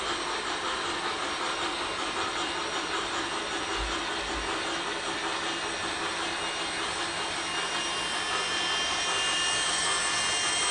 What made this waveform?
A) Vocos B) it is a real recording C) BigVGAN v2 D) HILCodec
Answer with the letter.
B